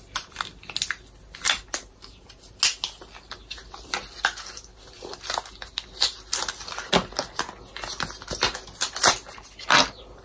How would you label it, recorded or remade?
recorded